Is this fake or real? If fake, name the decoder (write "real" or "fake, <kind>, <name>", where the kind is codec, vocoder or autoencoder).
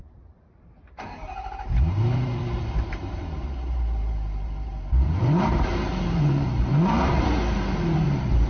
fake, vocoder, BigVGAN v2